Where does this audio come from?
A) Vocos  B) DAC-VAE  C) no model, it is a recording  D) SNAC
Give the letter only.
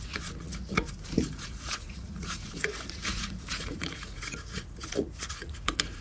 A